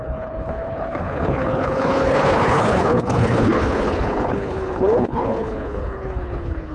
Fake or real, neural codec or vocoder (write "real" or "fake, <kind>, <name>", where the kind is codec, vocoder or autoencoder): fake, codec, HILCodec